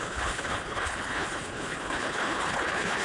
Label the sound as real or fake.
fake